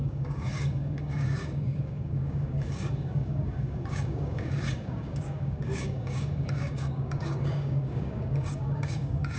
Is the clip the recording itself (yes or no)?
no